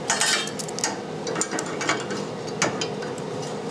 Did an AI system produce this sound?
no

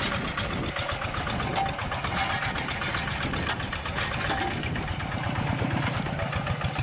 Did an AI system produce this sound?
no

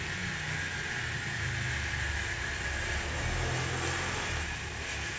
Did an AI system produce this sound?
no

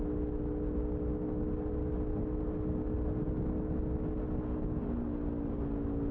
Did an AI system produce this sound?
no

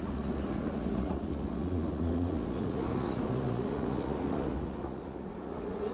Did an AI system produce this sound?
yes